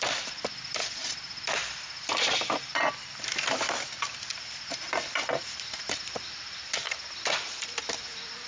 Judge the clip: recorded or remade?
remade